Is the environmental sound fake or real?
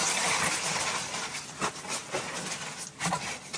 real